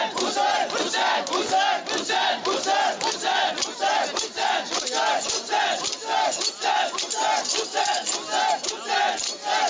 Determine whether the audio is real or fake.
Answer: real